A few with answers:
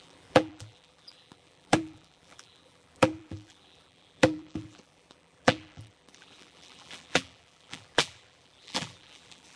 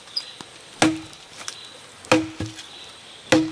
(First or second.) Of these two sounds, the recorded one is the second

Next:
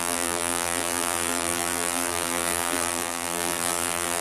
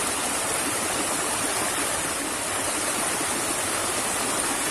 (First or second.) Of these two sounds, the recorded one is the second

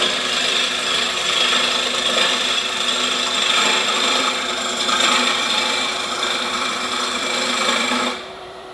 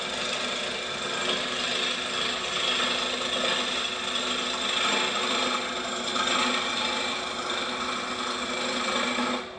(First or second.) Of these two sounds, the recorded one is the second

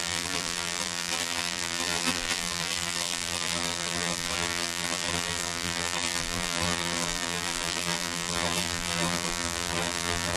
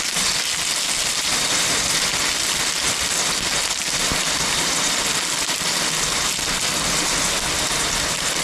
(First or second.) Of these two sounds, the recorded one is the second